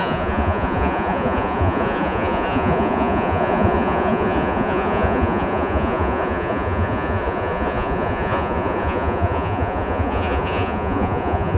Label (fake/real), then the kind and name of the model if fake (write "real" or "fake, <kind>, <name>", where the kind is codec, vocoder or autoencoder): fake, vocoder, Vocos